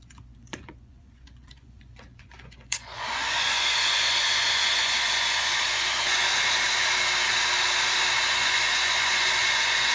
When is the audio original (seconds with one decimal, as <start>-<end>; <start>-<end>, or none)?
6.3-8.3